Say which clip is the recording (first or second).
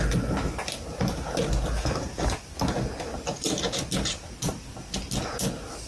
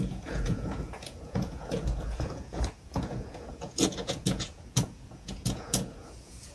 first